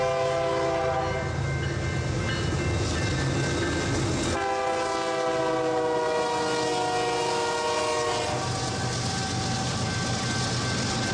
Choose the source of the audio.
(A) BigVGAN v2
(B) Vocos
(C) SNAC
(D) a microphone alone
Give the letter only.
D